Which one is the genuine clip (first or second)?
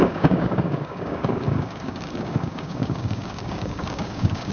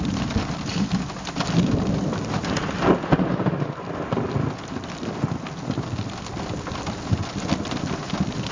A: second